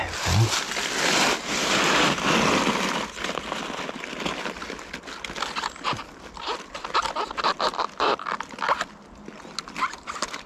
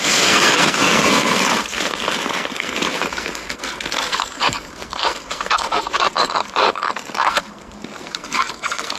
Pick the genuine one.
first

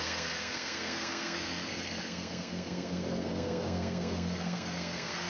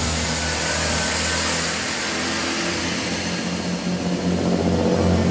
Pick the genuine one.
second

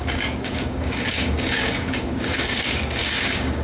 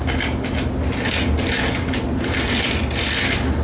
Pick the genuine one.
second